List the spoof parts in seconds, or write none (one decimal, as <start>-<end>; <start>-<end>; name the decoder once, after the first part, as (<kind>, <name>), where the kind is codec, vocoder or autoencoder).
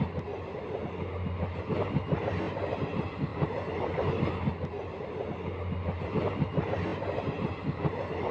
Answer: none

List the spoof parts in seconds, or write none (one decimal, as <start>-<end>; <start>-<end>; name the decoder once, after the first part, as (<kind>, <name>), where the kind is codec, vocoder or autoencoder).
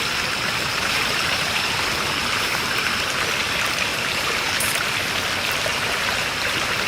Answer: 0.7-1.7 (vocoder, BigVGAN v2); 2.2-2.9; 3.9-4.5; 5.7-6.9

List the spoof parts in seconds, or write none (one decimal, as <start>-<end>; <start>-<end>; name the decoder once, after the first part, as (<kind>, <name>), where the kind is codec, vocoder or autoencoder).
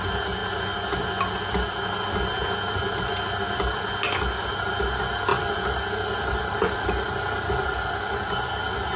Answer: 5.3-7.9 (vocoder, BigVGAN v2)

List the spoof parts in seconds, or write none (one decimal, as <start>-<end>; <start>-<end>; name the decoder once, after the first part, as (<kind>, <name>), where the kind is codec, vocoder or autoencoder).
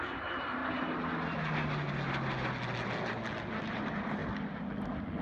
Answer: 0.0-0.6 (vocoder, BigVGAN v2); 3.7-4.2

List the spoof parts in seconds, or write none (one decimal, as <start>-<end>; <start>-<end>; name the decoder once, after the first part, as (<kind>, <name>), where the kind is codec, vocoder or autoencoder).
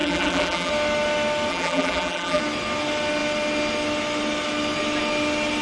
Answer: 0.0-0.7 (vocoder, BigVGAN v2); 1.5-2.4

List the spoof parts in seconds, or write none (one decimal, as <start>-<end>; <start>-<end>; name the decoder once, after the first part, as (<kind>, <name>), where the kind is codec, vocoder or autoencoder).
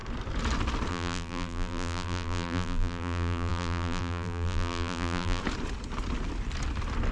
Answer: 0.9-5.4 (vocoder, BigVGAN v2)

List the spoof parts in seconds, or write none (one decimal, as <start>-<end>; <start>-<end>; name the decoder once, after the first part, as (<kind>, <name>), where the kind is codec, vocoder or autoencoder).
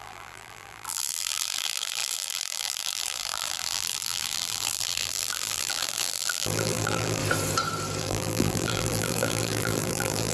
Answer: 0.0-7.2 (vocoder, BigVGAN v2); 8.0-10.3